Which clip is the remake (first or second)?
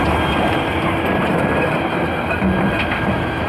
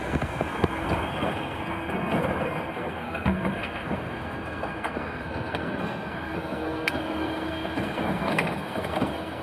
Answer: second